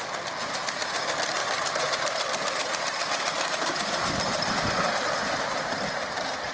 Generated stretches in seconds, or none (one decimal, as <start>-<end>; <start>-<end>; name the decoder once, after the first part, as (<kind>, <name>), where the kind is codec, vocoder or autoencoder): 1.4-4.5 (vocoder, BigVGAN v2)